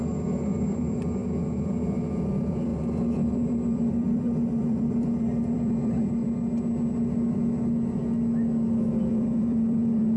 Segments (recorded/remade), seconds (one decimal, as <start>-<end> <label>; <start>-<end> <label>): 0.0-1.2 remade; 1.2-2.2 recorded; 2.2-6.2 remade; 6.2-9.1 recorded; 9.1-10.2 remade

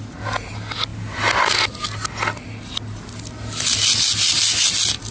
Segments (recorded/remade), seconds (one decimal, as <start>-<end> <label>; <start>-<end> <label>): 0.0-5.1 recorded

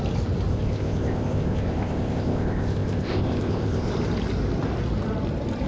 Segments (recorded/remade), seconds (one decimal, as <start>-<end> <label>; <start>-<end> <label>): 0.0-0.5 recorded; 0.5-3.9 remade; 3.9-5.7 recorded

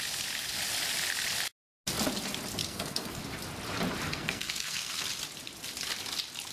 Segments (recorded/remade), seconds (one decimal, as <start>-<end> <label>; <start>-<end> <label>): 0.0-2.6 recorded; 2.6-3.2 remade; 3.2-4.1 recorded; 4.1-5.0 remade; 5.0-6.5 recorded

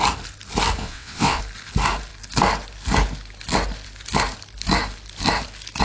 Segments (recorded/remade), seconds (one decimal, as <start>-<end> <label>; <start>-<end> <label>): 0.0-0.8 recorded; 0.8-1.4 remade; 1.4-5.8 recorded

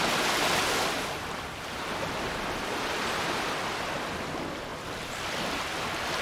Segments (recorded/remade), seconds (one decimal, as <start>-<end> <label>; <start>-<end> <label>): 0.0-6.2 recorded

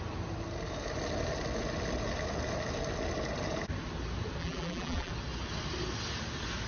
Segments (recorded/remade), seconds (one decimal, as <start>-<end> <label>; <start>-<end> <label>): 0.0-4.4 recorded; 4.4-5.1 remade; 5.1-6.7 recorded